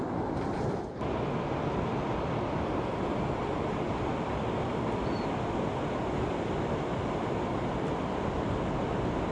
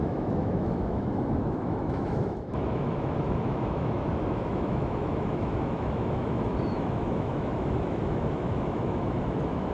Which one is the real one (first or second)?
first